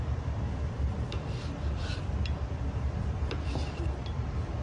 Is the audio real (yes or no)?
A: no